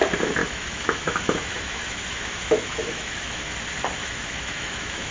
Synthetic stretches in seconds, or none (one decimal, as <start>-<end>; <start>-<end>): 0.4-3.5; 4.0-5.1